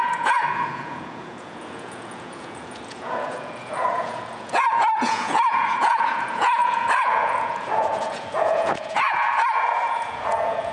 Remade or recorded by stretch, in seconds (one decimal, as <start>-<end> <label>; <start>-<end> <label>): 0.0-10.7 remade